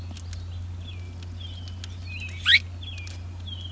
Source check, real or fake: real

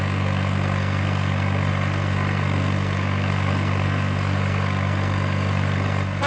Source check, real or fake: fake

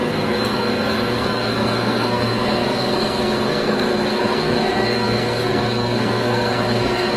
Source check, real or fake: fake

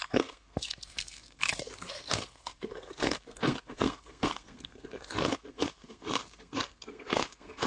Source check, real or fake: fake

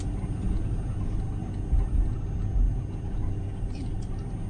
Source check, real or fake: real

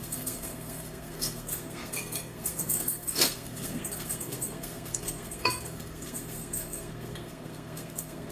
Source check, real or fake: fake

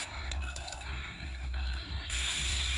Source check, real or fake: fake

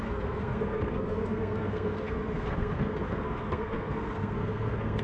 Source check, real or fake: fake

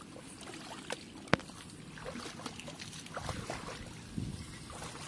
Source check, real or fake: real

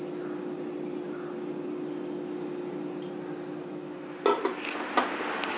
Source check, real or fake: real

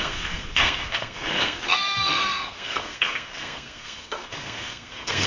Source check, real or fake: fake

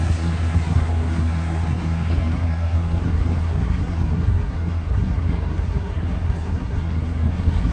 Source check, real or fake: fake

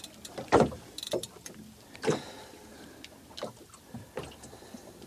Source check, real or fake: real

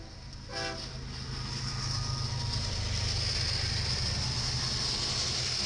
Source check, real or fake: real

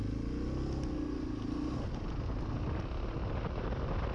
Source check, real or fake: real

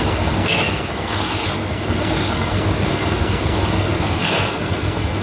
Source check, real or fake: fake